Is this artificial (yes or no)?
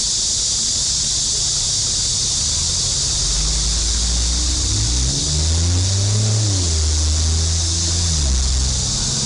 no